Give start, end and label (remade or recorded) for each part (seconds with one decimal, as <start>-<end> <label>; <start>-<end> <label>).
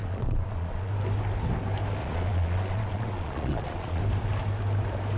0.0-0.9 remade; 0.9-2.0 recorded; 2.0-4.0 remade; 4.0-5.2 recorded